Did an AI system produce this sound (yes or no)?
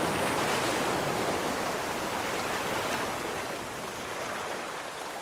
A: no